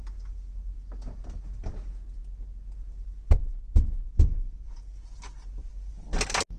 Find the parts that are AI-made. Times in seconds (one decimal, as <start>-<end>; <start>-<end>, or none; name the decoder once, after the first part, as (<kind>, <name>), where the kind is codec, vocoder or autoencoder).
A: none